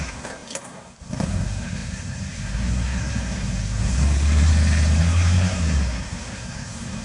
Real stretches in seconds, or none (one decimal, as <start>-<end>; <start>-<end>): 4.5-5.0